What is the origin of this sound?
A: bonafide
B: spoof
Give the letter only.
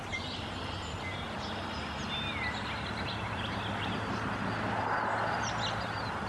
A